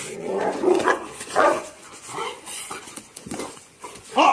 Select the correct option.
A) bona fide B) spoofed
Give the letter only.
B